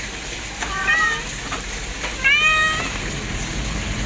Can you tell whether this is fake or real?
real